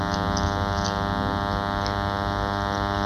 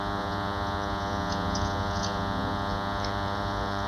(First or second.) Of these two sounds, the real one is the first